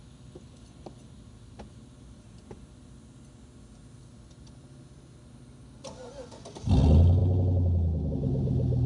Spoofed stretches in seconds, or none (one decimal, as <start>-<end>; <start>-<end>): none